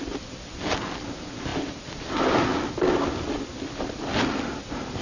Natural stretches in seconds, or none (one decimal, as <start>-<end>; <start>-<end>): 0.0-5.0